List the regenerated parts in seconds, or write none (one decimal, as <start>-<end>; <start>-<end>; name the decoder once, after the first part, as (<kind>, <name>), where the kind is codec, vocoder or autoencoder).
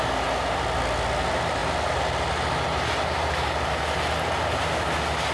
none